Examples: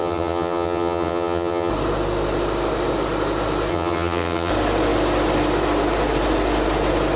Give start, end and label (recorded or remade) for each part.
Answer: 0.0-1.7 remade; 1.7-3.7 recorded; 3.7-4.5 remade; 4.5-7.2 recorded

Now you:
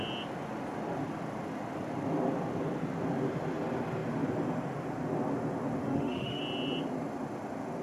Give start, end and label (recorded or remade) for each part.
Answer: 0.0-5.8 recorded; 5.8-6.4 remade; 6.4-7.8 recorded

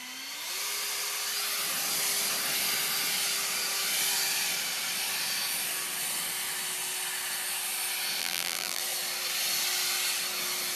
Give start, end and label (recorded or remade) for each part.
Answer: 0.0-8.2 recorded; 8.2-8.8 remade; 8.8-10.8 recorded

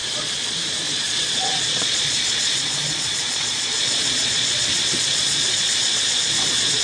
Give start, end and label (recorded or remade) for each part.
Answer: 0.0-6.8 remade

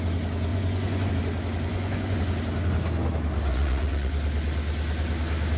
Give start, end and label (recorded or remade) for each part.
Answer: 0.0-0.5 recorded; 0.5-1.1 remade; 1.1-1.7 recorded; 1.7-2.2 remade; 2.2-3.5 recorded; 3.5-4.1 remade; 4.1-5.6 recorded

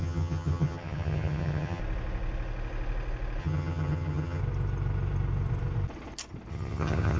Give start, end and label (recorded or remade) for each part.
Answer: 0.0-1.8 remade; 1.8-3.4 recorded; 3.4-4.4 remade; 4.4-6.5 recorded; 6.5-7.2 remade